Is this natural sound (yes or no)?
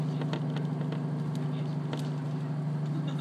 yes